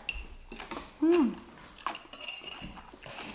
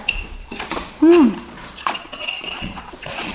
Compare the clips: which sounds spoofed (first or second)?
second